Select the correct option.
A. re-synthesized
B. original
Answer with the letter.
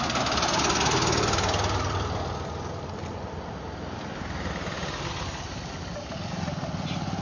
B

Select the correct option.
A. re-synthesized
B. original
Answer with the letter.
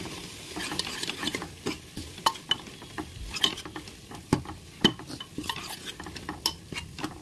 B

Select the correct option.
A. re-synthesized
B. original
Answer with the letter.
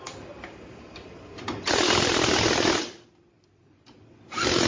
B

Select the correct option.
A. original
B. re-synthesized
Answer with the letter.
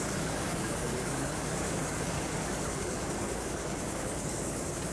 B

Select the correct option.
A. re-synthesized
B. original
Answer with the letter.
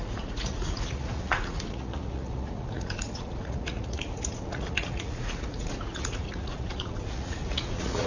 A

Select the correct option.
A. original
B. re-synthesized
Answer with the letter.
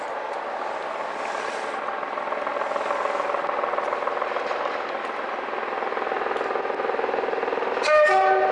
A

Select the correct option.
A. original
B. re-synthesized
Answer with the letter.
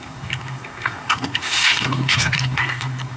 B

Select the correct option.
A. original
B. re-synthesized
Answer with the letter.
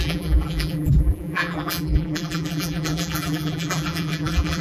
B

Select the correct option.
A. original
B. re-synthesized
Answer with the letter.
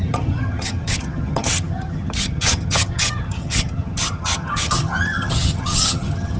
B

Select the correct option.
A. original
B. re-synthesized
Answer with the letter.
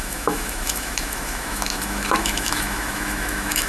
B